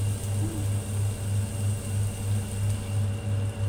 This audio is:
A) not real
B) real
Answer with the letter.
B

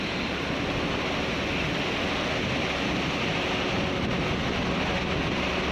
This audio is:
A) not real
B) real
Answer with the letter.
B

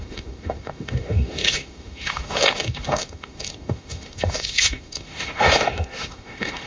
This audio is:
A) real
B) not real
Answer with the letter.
B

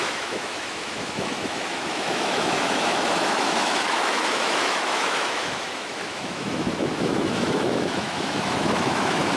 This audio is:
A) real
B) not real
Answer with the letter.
B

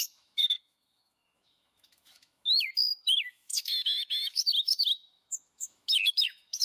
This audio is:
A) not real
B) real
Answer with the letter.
A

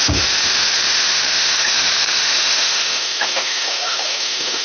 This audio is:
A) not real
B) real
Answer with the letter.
A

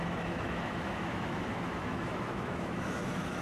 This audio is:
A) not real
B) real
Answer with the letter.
A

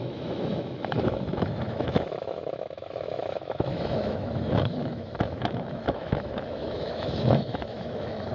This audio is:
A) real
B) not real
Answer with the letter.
B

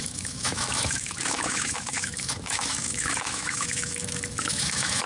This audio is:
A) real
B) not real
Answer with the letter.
B